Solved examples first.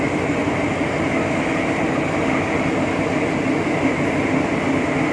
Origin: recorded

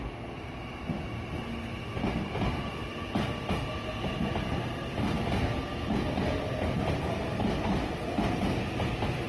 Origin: recorded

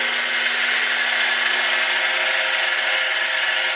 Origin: recorded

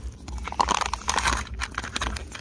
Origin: recorded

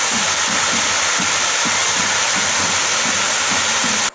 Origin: recorded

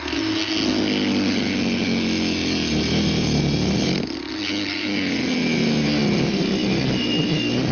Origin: recorded